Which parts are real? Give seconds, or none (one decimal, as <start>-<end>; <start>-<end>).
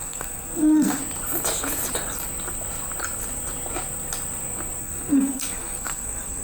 1.0-4.8